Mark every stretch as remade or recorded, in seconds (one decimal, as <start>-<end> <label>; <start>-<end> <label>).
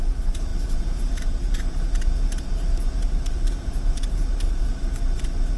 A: 0.0-5.6 remade